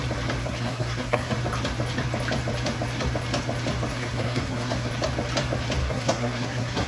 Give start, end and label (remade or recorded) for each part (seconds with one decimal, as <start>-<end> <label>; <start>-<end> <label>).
0.0-0.4 recorded; 0.4-1.3 remade; 1.3-3.9 recorded; 3.9-4.9 remade; 4.9-5.8 recorded; 5.8-6.9 remade